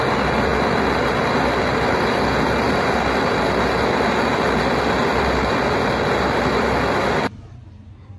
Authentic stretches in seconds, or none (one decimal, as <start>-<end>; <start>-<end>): 0.0-8.2